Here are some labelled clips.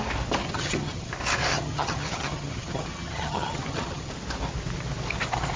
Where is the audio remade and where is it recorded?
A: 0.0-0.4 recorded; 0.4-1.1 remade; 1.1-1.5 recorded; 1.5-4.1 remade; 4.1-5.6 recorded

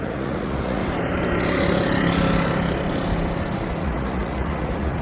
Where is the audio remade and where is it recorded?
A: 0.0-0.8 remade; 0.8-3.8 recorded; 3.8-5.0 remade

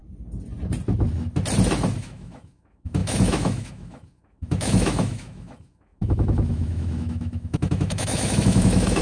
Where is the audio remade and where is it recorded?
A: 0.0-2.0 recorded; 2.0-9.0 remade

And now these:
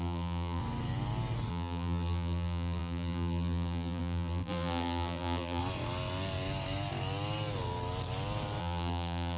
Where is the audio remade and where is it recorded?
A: 0.0-0.6 remade; 0.6-1.5 recorded; 1.5-5.6 remade; 5.6-8.6 recorded; 8.6-9.4 remade

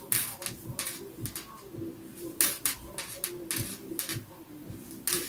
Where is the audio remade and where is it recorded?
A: 0.0-2.1 recorded; 2.1-2.8 remade; 2.8-4.1 recorded; 4.1-4.7 remade; 4.7-5.3 recorded